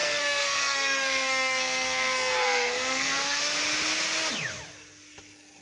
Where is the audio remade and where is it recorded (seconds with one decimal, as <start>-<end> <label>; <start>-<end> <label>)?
0.0-3.4 remade; 3.4-5.6 recorded